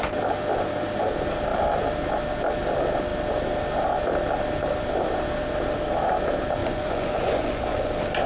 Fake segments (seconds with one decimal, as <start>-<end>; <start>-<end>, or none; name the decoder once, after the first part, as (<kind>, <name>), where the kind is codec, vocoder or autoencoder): 6.6-7.9 (vocoder, Vocos)